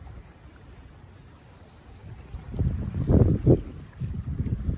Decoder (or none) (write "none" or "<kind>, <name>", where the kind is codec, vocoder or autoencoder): none